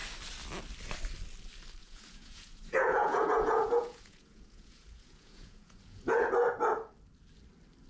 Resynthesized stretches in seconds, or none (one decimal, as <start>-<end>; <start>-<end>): 1.8-6.2